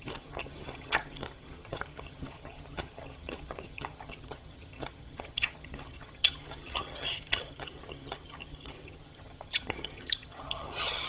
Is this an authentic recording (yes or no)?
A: no